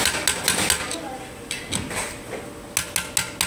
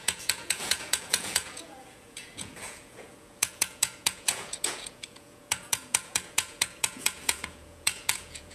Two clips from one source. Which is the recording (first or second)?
first